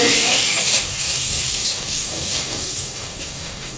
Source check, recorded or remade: remade